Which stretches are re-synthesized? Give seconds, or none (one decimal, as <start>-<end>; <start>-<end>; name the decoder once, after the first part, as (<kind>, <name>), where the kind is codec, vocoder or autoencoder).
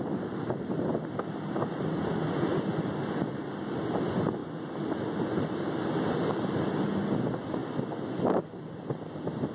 none